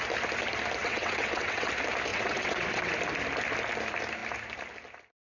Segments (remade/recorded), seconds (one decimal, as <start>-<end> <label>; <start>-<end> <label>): 0.0-0.8 recorded; 0.8-1.7 remade; 1.7-2.1 recorded; 2.1-2.9 remade; 2.9-5.4 recorded